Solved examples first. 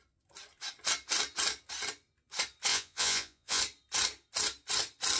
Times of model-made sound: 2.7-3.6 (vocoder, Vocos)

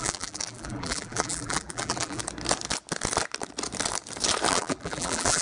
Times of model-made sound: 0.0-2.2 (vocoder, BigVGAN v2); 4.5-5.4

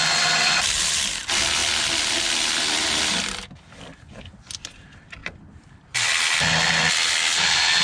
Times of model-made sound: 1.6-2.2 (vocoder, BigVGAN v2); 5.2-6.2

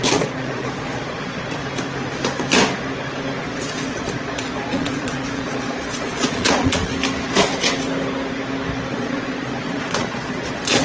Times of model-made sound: 0.0-1.6 (vocoder, Vocos); 3.4-6.9; 8.9-10.8

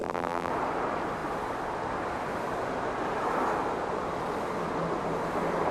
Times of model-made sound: 0.0-0.5 (vocoder, BigVGAN v2)

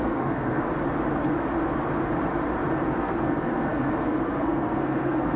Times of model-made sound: 0.0-0.7 (codec, SNAC); 3.0-5.4